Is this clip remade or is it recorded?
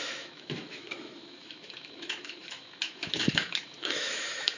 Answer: remade